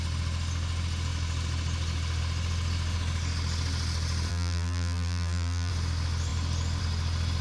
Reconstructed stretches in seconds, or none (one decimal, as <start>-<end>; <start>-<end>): 4.3-5.7